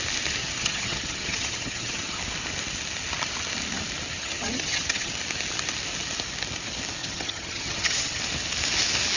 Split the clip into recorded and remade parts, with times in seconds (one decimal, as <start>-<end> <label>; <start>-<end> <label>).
0.0-0.4 recorded; 0.4-2.2 remade; 2.2-4.1 recorded; 4.1-5.1 remade; 5.1-7.0 recorded; 7.0-8.2 remade; 8.2-9.2 recorded